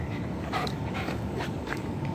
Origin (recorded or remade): remade